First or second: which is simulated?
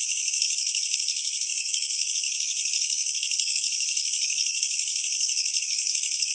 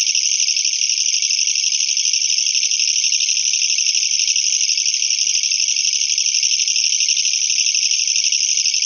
first